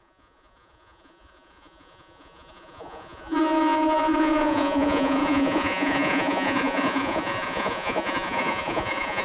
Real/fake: fake